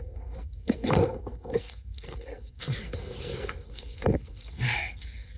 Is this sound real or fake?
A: fake